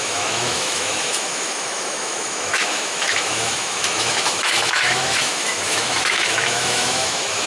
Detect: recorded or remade remade